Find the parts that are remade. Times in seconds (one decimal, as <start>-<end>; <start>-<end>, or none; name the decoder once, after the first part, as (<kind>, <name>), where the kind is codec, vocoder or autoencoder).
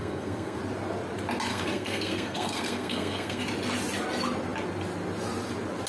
0.0-0.6 (codec, SNAC); 1.5-3.4